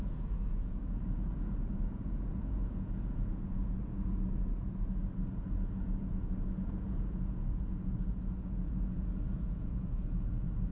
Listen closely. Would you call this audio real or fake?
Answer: fake